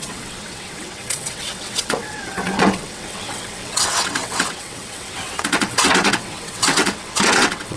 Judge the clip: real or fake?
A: fake